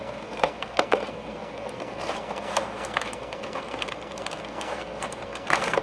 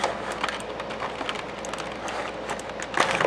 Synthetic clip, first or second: first